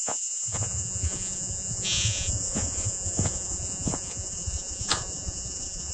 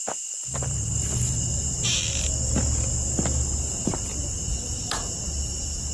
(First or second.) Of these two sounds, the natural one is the second